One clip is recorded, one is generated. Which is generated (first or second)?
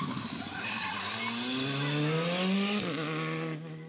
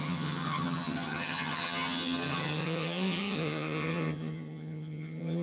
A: second